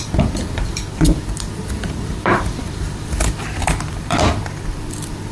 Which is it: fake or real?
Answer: fake